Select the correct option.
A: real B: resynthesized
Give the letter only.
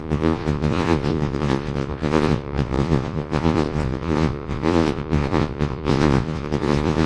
B